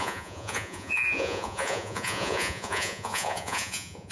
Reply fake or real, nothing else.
fake